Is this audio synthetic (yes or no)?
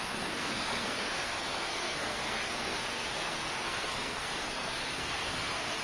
yes